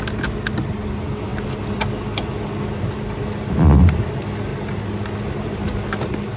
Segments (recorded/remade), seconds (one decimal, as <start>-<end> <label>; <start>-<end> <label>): 0.0-6.4 recorded